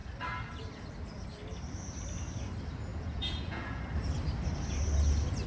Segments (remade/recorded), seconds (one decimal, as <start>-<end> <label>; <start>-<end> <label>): 0.0-2.9 recorded; 2.9-3.8 remade; 3.8-5.5 recorded